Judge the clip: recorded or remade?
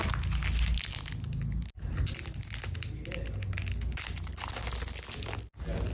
recorded